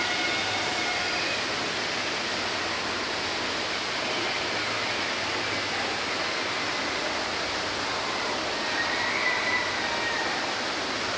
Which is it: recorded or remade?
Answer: recorded